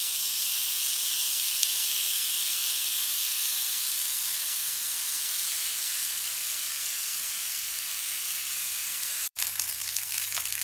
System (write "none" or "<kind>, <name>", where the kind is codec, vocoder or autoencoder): codec, SNAC